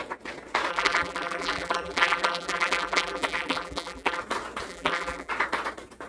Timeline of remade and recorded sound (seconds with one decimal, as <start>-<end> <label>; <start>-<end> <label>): 0.0-0.7 recorded; 0.7-4.2 remade; 4.2-4.7 recorded; 4.7-5.3 remade; 5.3-6.1 recorded